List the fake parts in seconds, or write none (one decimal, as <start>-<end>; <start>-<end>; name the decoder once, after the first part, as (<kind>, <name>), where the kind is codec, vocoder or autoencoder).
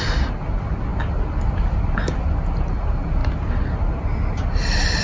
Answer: none